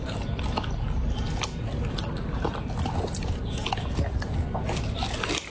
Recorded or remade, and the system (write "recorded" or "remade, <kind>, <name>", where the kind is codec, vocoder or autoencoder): recorded